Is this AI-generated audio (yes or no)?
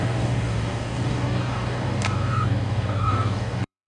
yes